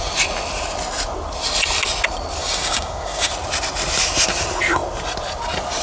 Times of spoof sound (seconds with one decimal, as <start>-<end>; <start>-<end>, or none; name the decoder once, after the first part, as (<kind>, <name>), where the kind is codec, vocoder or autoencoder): 2.4-3.3 (codec, DAC)